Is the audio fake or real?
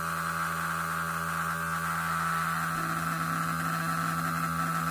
real